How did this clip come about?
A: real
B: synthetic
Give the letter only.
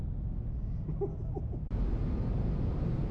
A